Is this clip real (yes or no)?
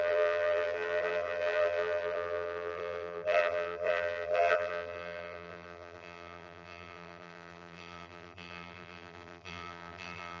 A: no